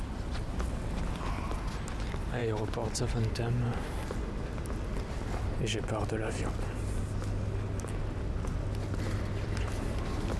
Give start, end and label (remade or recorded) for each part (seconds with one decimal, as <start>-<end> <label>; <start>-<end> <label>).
0.0-10.4 recorded